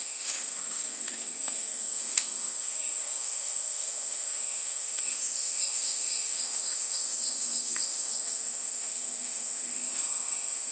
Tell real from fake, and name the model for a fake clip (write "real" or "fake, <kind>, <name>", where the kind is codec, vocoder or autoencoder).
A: fake, autoencoder, DAC-VAE